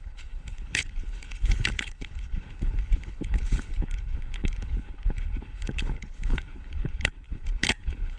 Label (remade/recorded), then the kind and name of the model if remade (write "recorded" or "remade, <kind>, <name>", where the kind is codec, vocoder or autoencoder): remade, codec, HILCodec